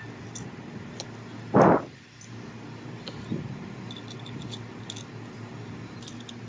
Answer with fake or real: real